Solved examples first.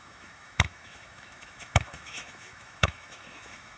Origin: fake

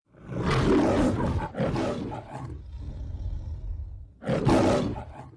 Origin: real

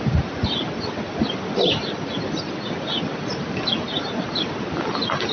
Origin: real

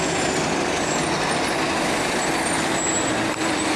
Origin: real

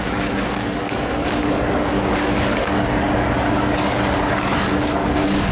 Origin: fake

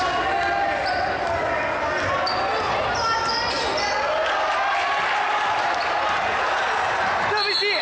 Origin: real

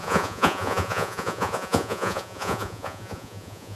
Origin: fake